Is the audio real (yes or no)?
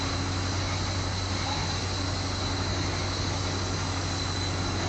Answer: yes